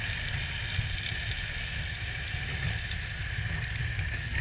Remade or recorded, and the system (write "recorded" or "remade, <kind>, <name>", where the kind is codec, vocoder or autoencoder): recorded